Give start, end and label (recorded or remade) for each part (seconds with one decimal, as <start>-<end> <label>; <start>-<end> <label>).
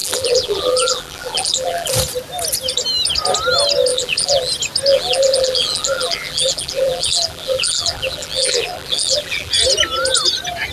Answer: 0.0-1.9 remade; 1.9-3.9 recorded; 3.9-4.5 remade; 4.5-4.9 recorded; 4.9-9.5 remade; 9.5-10.7 recorded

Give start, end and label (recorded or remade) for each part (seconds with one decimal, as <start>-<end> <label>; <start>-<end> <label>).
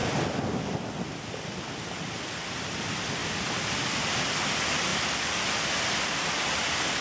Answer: 0.0-7.0 recorded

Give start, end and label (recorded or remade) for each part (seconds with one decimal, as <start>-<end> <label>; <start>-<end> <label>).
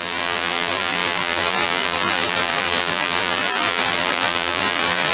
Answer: 0.0-5.1 remade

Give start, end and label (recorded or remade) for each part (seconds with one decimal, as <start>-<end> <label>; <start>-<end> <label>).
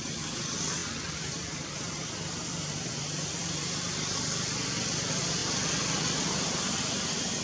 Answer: 0.0-7.4 recorded